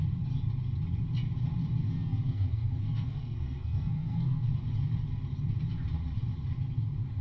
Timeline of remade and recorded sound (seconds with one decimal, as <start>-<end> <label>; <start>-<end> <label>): 0.0-1.8 recorded; 1.8-4.5 remade; 4.5-7.2 recorded